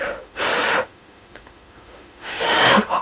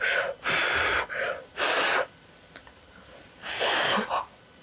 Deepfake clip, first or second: first